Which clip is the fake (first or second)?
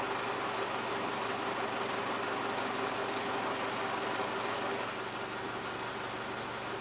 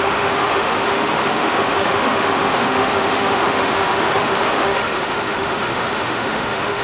second